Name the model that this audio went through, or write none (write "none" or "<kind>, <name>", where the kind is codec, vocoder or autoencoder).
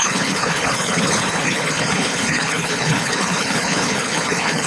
codec, HILCodec